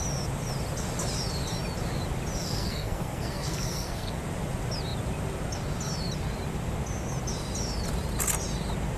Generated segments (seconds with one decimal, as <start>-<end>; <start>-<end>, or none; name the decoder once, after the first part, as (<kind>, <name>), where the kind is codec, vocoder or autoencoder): 2.4-4.2 (codec, SNAC)